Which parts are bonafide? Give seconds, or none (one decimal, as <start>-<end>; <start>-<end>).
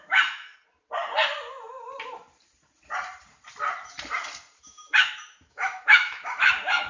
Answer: 0.5-4.6